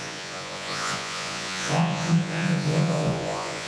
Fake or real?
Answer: fake